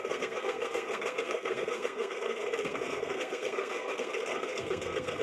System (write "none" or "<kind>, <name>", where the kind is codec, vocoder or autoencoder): codec, SNAC